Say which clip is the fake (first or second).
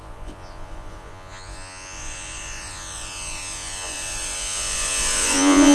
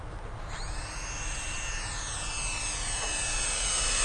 first